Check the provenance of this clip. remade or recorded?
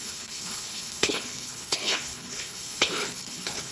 remade